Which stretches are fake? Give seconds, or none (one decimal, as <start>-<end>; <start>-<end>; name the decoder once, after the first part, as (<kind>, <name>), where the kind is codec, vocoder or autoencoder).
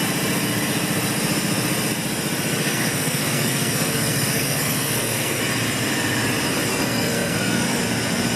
2.6-5.4 (codec, SNAC); 6.7-7.8